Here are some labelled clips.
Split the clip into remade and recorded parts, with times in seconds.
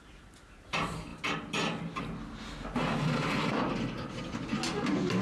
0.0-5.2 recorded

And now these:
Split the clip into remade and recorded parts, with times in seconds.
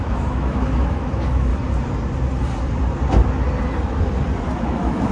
0.0-1.5 remade; 1.5-4.6 recorded; 4.6-5.1 remade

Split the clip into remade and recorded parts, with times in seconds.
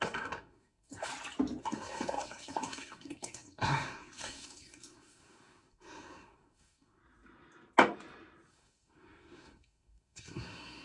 0.0-1.1 remade; 1.1-1.6 recorded; 1.6-7.0 remade; 7.0-8.5 recorded; 8.5-10.8 remade